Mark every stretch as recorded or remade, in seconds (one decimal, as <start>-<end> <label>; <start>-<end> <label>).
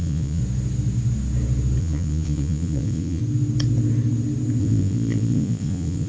0.0-0.4 remade; 0.4-1.8 recorded; 1.8-3.2 remade; 3.2-4.6 recorded; 4.6-6.1 remade